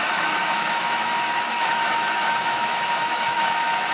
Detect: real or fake fake